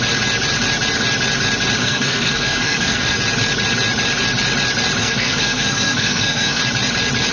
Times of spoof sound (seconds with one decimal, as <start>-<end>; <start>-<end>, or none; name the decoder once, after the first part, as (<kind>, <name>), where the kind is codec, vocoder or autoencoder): 1.8-3.2 (codec, SNAC); 5.0-6.6